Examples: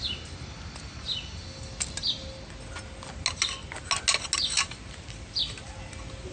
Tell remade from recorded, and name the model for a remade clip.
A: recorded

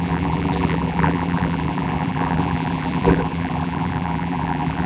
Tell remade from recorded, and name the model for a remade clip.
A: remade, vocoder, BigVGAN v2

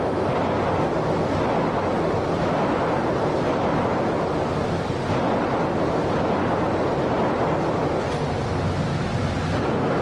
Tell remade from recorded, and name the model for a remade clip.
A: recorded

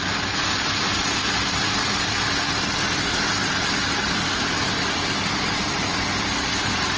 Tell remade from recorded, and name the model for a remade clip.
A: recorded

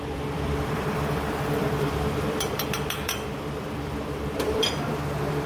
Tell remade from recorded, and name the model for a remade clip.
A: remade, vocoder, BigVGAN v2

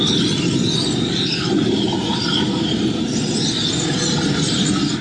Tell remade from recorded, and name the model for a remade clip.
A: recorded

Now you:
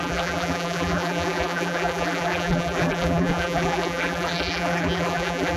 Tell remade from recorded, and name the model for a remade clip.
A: remade, vocoder, BigVGAN v2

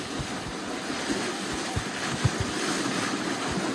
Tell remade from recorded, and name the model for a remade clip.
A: recorded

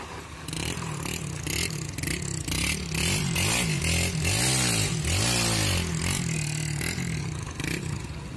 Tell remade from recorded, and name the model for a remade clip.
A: recorded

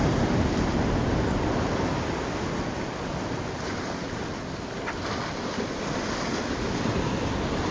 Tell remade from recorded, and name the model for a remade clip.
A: recorded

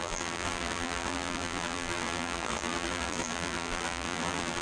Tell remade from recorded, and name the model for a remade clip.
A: remade, vocoder, BigVGAN v2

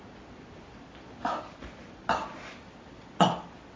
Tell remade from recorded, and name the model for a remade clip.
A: recorded